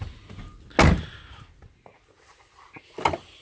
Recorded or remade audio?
recorded